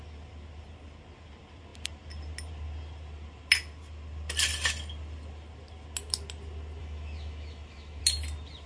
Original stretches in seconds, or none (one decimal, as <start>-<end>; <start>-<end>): 0.0-6.8; 8.0-8.7